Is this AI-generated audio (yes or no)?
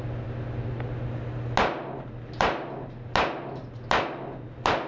no